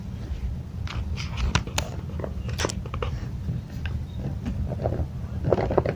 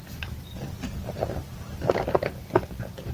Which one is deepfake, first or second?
first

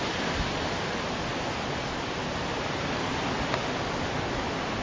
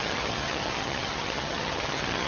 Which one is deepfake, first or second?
second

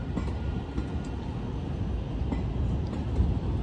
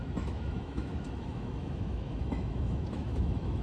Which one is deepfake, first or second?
second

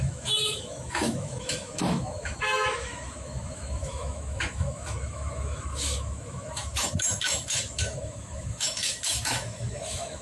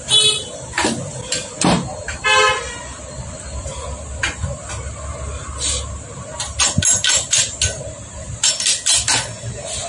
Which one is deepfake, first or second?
first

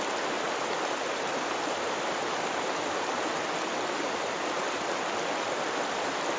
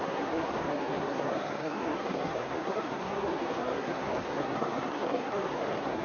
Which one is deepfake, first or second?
second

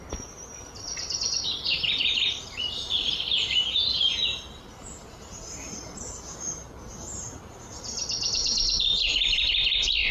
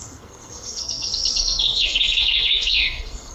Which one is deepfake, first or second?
second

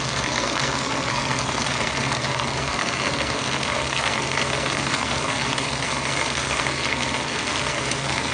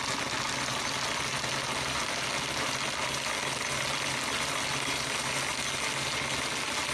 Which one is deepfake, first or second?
first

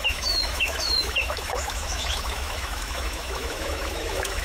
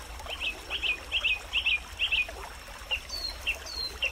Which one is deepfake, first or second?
first